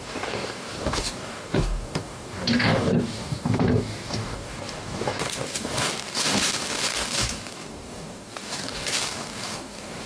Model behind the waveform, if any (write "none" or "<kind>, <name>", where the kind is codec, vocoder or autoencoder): codec, DAC